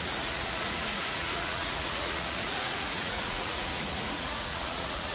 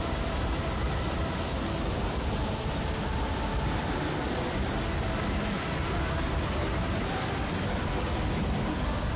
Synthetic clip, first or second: first